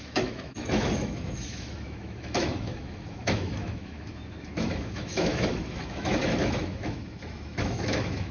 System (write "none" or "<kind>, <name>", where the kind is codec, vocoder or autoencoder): autoencoder, DAC-VAE